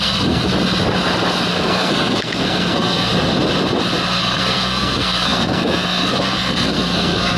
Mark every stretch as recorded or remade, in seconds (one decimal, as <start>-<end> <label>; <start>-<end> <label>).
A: 0.0-0.5 remade; 0.5-1.5 recorded; 1.5-3.1 remade; 3.1-4.2 recorded; 4.2-7.4 remade